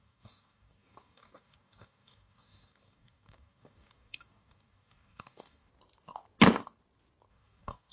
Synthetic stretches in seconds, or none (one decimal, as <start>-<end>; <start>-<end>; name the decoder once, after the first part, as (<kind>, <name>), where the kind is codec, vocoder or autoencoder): 0.0-5.7 (codec, DAC); 7.3-7.9